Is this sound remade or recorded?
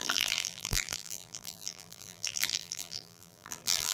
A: remade